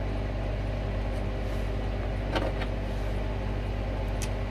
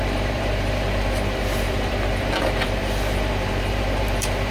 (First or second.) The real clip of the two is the first